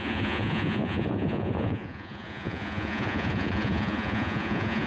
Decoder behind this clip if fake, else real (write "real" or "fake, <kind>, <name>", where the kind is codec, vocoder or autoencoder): fake, vocoder, Vocos